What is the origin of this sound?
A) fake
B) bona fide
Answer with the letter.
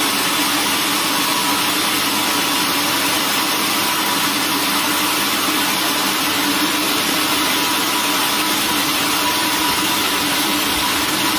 B